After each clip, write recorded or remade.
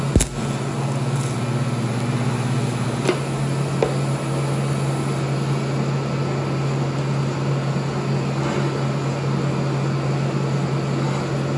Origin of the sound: recorded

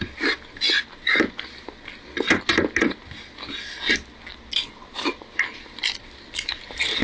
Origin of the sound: recorded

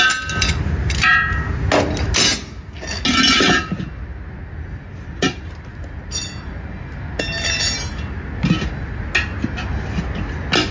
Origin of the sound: recorded